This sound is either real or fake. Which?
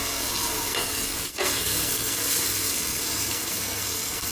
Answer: fake